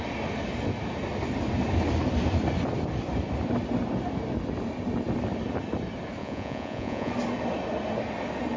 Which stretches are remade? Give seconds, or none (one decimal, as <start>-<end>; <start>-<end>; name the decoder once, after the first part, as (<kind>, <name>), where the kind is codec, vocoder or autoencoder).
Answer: 6.2-7.1 (vocoder, Vocos)